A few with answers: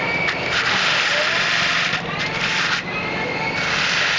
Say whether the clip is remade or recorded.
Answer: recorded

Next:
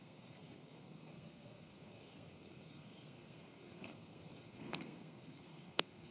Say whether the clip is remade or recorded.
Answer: remade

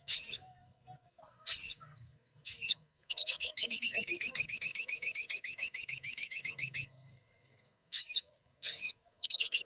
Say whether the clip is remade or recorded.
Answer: remade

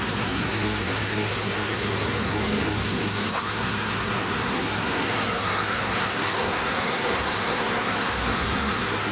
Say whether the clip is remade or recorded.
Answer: remade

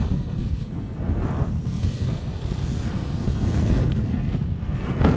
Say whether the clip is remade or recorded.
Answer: remade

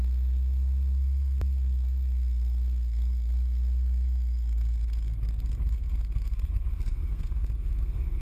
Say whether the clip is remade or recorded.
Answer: remade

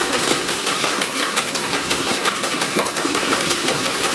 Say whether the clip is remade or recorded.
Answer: remade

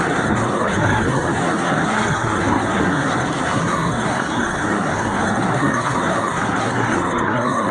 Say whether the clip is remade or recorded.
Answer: remade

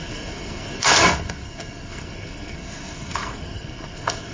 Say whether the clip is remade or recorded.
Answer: remade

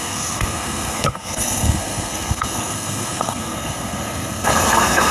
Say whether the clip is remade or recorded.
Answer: remade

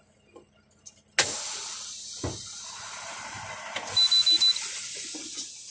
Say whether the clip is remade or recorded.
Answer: recorded